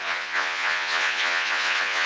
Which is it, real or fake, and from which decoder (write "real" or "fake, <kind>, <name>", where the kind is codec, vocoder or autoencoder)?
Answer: fake, vocoder, Vocos